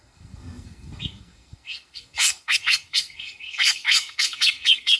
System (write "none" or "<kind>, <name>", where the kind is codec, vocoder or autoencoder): codec, SNAC